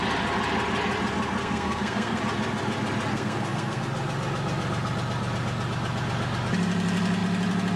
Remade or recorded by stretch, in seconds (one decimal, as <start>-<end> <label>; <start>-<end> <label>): 0.0-1.4 recorded; 1.4-2.2 remade; 2.2-3.1 recorded; 3.1-3.8 remade; 3.8-7.8 recorded